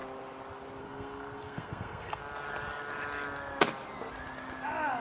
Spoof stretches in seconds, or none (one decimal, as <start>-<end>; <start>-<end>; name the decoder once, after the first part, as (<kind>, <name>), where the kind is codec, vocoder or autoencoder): 0.8-2.2 (codec, SNAC)

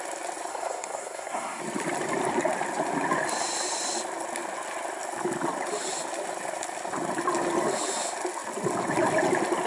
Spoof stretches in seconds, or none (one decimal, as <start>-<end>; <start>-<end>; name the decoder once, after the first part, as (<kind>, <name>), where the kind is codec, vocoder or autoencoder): 0.5-1.6 (codec, SNAC)

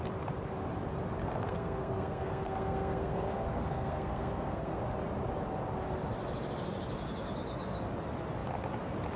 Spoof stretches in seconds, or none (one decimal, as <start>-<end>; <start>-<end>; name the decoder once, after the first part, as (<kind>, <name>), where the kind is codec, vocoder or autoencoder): 1.2-4.8 (codec, SNAC)

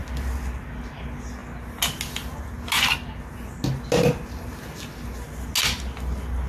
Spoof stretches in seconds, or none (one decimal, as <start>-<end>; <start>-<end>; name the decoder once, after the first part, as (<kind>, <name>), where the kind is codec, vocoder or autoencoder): none

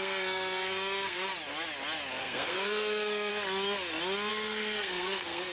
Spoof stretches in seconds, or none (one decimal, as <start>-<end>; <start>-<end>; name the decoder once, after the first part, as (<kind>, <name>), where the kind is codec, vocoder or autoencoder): 0.0-1.3 (codec, SNAC); 2.2-3.3; 4.3-5.5

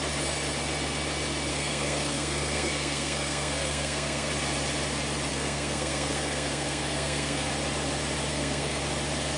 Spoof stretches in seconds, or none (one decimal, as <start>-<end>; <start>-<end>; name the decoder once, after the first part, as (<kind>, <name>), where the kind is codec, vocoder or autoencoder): 1.5-4.3 (codec, SNAC); 5.3-7.5; 8.3-8.8